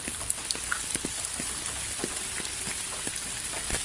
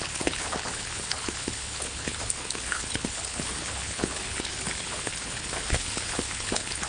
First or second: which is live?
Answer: first